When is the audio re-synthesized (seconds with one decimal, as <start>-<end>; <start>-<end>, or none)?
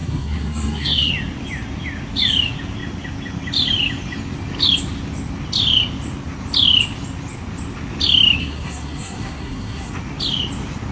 0.0-1.1; 8.4-9.9